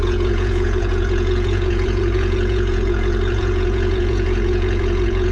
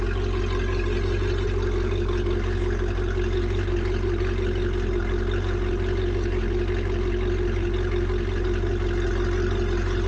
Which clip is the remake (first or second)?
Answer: first